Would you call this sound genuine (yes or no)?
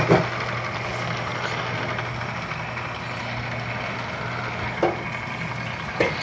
yes